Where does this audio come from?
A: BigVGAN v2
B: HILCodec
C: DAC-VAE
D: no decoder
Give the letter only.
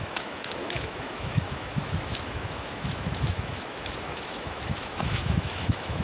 C